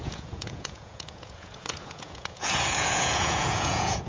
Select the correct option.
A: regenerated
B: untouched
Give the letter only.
A